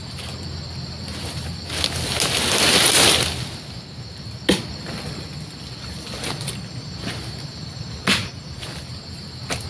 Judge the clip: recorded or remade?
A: recorded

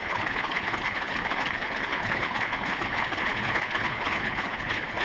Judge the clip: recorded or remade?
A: remade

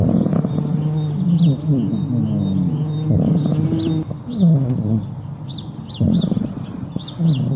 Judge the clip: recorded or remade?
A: recorded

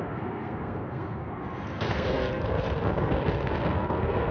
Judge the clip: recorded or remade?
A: remade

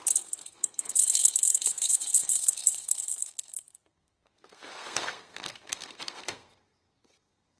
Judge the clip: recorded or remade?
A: remade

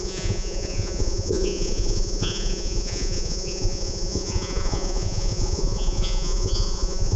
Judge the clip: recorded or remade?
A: remade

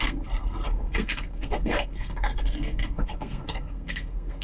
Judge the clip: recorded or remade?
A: remade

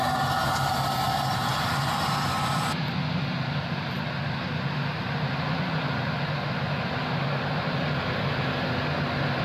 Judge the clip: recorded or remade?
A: recorded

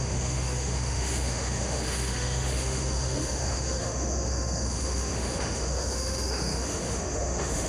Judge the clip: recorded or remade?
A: remade